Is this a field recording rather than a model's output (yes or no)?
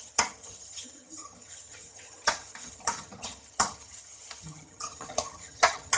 no